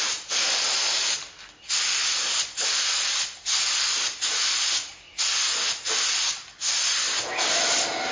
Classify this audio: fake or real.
real